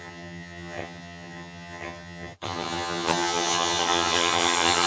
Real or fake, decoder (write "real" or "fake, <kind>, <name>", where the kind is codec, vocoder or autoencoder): fake, vocoder, HiFi-GAN